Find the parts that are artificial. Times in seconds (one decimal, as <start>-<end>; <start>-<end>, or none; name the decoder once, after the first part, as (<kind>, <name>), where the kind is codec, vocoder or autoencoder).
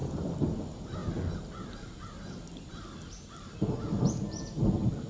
none